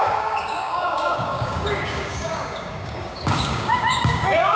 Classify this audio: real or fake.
fake